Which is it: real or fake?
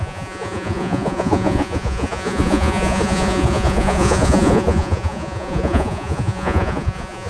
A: fake